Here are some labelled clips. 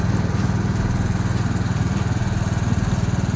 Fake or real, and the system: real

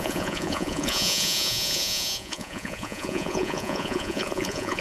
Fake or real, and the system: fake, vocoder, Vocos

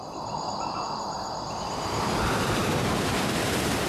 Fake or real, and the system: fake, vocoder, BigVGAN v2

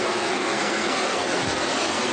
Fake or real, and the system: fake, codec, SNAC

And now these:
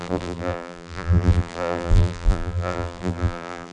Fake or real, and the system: fake, vocoder, BigVGAN v2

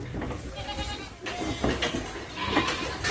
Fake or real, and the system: real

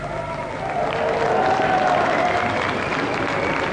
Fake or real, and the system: fake, vocoder, BigVGAN v2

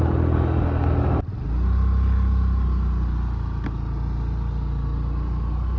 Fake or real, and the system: real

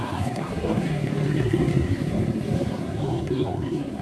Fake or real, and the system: fake, codec, SNAC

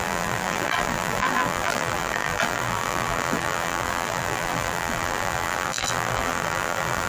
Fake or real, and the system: fake, vocoder, BigVGAN v2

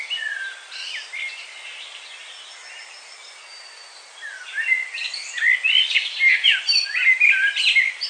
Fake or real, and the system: real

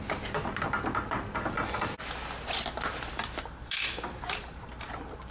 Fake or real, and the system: real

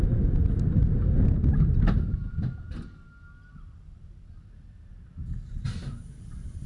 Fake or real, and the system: real